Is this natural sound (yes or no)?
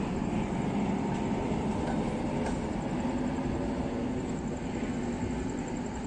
yes